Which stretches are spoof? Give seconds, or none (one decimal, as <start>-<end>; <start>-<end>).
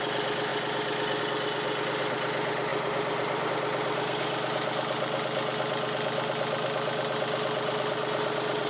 2.7-3.5